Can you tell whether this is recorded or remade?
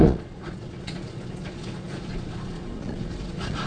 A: remade